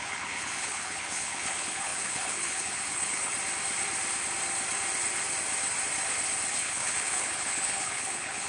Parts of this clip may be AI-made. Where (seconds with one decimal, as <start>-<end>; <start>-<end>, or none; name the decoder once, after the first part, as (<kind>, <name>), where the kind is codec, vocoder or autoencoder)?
0.0-3.3 (codec, HILCodec); 6.5-8.5